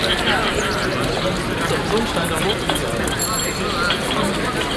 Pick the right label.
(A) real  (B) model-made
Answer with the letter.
A